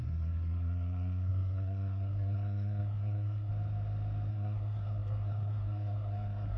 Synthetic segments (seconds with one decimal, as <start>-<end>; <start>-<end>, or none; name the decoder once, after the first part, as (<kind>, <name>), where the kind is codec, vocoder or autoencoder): 0.0-3.5 (codec, SNAC); 4.3-6.6